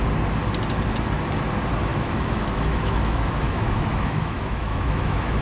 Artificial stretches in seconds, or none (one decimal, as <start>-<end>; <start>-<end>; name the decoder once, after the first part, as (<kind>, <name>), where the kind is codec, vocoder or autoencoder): 1.9-5.4 (autoencoder, DAC-VAE)